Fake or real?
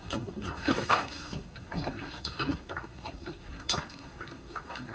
fake